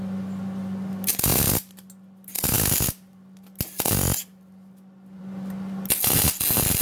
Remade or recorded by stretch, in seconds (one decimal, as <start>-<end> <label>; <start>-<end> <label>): 0.0-6.8 recorded